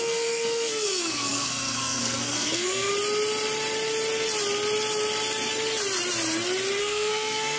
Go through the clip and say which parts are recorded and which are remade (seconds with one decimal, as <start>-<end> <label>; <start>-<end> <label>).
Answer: 0.0-2.9 remade; 2.9-6.8 recorded; 6.8-7.6 remade